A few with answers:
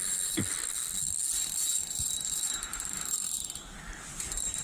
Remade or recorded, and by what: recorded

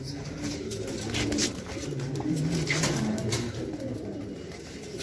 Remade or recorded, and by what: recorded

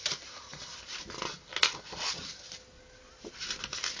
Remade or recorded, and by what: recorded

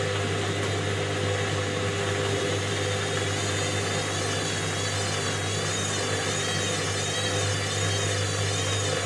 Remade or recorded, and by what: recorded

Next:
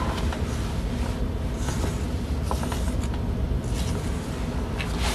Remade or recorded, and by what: recorded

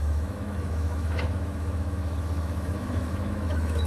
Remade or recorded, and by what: remade, autoencoder, DAC-VAE